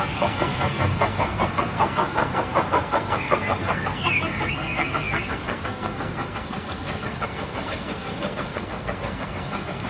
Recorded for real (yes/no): no